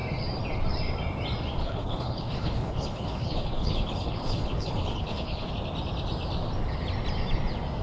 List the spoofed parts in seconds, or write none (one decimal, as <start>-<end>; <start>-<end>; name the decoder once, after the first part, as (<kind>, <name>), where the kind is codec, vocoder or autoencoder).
1.6-5.5 (codec, HILCodec)